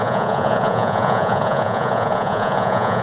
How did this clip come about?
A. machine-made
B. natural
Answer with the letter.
A